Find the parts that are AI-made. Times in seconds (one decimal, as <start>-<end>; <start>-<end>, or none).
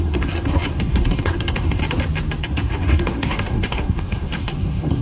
0.0-1.8; 2.4-5.0